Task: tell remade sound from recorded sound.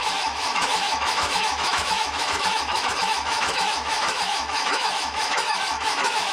remade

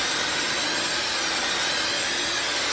recorded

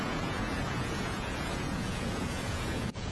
remade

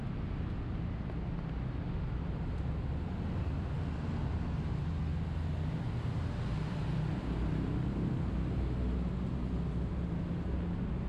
recorded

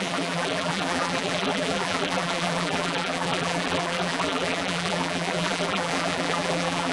remade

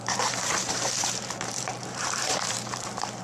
remade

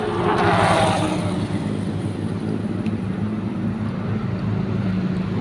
recorded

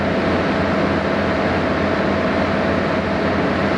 recorded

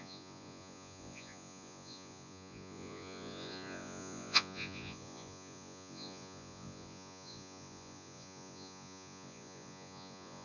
remade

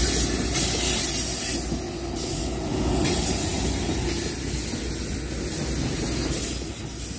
recorded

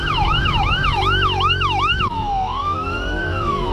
remade